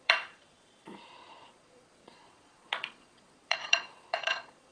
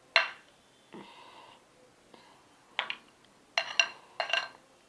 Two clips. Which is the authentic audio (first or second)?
second